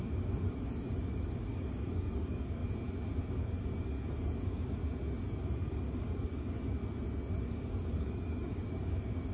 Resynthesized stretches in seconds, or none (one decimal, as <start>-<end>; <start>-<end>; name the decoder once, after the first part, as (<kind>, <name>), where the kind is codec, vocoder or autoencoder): 0.0-2.6 (codec, DAC); 3.2-4.8; 5.3-6.8; 7.4-9.3